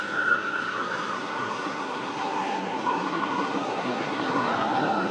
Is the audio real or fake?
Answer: fake